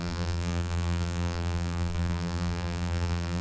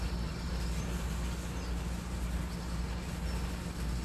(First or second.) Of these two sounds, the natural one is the second